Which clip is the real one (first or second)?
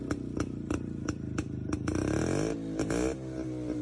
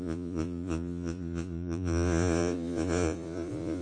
first